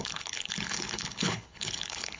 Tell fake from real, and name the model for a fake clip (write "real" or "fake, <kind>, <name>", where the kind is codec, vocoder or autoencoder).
fake, codec, HILCodec